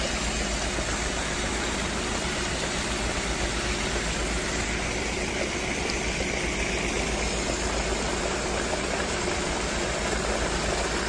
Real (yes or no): yes